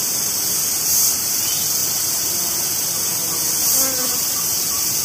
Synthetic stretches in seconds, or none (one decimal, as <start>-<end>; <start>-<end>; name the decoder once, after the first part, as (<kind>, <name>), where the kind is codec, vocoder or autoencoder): none